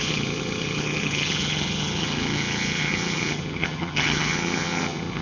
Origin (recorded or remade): remade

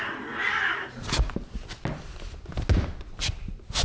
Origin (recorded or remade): recorded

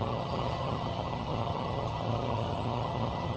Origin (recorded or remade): remade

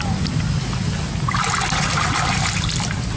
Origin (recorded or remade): recorded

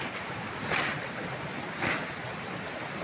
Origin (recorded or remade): recorded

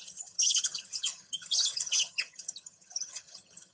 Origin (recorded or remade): remade